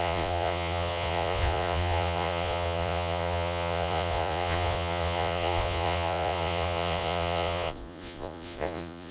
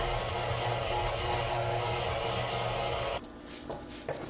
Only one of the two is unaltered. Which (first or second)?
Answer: second